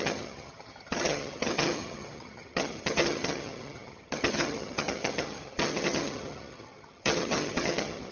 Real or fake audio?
fake